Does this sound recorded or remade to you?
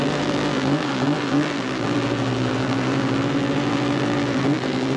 remade